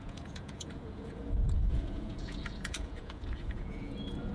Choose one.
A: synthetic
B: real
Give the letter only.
A